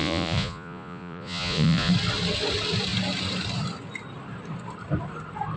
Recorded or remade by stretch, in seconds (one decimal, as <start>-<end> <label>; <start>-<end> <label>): 0.0-1.9 remade; 1.9-5.6 recorded